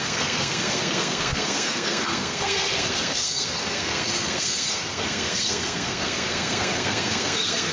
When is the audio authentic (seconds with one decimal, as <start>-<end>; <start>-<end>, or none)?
none